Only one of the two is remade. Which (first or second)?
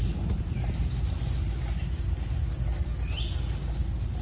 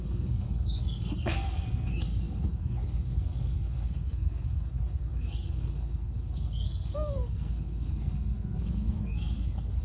second